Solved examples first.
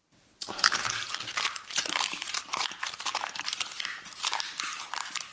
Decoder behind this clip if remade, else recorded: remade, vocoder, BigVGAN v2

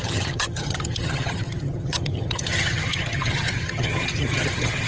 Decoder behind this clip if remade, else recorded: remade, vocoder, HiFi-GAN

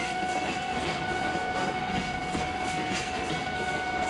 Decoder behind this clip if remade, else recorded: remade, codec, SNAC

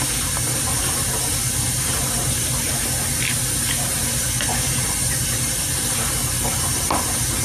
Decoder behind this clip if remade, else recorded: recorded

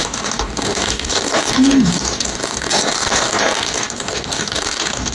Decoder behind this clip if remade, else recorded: remade, codec, DAC